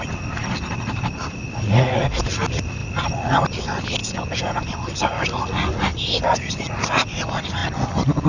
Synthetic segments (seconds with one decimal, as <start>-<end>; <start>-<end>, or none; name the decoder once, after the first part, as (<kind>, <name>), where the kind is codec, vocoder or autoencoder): 4.0-4.6 (vocoder, Vocos)